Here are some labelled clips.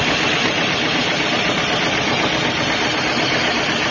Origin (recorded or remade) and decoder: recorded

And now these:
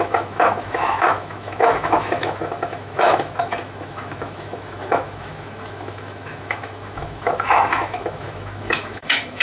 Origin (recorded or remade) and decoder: remade, autoencoder, DAC-VAE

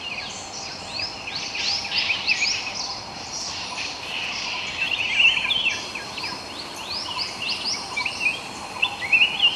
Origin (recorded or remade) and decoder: recorded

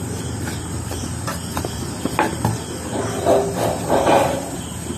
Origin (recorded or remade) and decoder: recorded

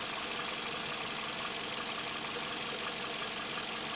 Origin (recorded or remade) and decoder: recorded